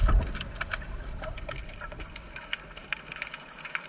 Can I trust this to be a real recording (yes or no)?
yes